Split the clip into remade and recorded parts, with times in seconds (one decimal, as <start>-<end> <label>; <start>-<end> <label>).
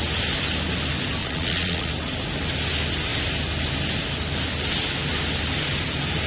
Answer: 0.0-1.2 recorded; 1.2-1.9 remade; 1.9-6.3 recorded